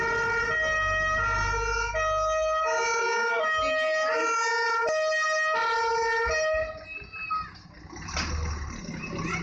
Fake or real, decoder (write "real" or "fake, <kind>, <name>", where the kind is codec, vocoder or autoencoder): real